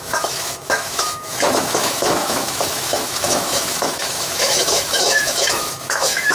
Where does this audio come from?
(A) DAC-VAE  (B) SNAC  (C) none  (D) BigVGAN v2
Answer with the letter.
A